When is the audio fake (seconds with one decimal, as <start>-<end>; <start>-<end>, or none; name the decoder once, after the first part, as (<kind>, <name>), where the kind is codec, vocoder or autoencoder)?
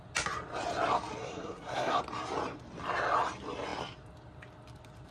1.2-2.0 (codec, SNAC)